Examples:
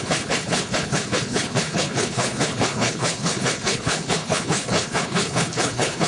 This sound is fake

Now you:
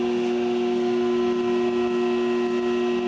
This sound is real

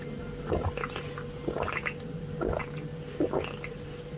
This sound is real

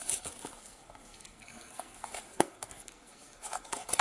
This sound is fake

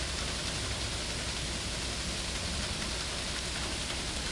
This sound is real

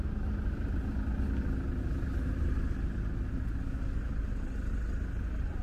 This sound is real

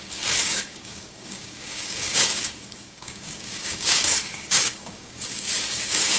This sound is fake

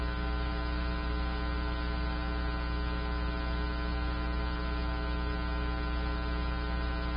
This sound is real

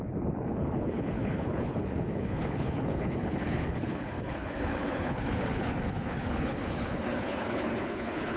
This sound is fake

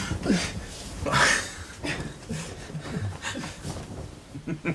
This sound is fake